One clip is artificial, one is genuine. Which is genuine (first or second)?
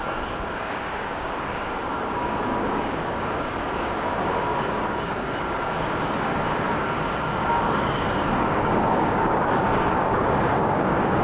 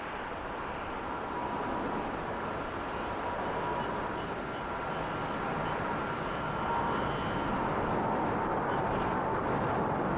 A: second